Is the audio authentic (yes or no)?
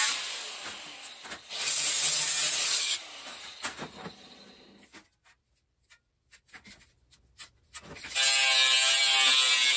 yes